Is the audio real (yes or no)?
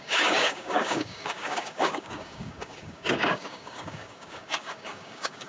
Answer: no